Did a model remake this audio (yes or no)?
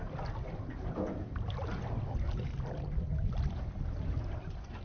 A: no